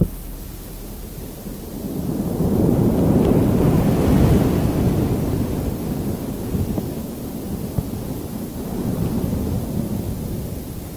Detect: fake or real real